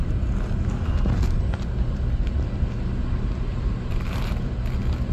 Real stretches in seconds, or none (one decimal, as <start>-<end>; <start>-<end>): 0.0-3.5; 4.5-5.1